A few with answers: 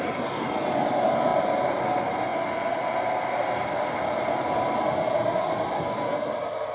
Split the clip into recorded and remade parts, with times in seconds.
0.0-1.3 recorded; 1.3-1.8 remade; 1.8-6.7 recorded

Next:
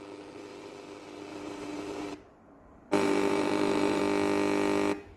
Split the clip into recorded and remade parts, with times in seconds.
0.0-1.3 recorded; 1.3-4.0 remade; 4.0-5.2 recorded